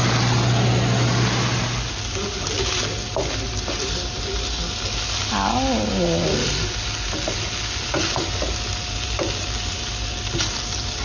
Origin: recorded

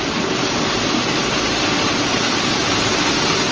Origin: recorded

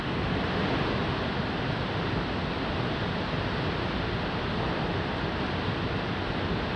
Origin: recorded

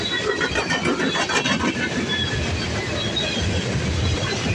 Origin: recorded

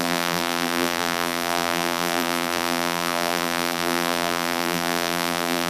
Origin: remade